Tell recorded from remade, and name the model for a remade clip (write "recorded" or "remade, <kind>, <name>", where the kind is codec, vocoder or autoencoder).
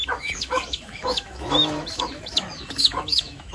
remade, autoencoder, DAC-VAE